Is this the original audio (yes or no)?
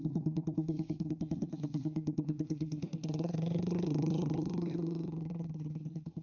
no